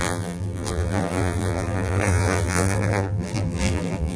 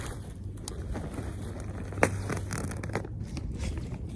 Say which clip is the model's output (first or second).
first